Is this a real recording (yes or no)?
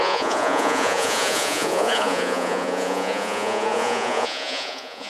no